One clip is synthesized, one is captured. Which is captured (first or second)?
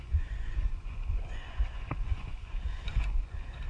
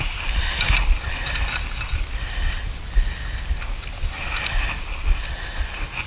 second